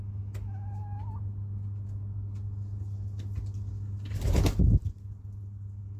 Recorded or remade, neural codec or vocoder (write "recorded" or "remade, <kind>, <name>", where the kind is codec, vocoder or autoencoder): recorded